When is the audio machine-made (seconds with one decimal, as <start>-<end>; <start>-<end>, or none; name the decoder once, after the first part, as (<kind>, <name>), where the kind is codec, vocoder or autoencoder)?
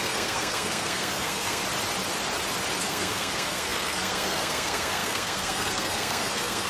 0.0-1.6 (codec, SNAC); 2.8-6.7